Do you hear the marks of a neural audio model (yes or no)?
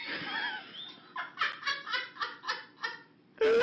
no